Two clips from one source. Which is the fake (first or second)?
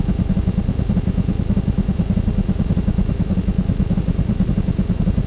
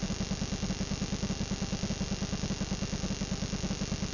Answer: first